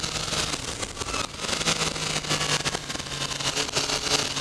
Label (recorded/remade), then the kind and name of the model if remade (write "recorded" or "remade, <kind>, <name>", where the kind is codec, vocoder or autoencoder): recorded